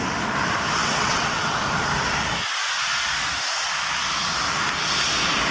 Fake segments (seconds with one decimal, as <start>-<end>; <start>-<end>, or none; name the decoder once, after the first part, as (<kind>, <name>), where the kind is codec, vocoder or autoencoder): 0.8-1.6 (vocoder, WaveNeXt)